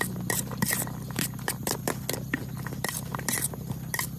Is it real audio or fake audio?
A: real